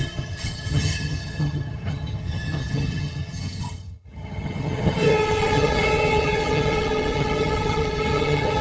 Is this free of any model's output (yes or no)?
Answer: no